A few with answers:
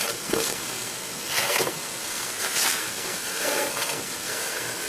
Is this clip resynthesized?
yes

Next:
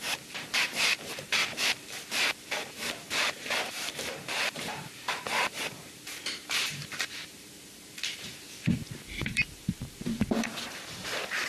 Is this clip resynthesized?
yes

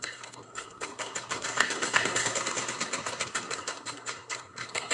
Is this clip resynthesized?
yes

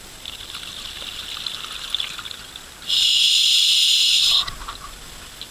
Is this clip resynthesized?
no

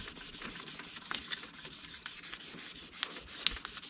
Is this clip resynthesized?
no